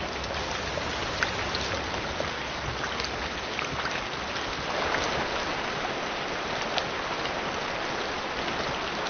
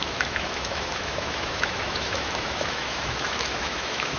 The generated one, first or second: second